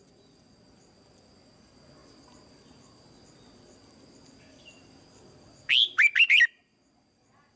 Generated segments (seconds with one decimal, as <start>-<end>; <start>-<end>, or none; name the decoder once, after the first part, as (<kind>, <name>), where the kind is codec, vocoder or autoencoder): none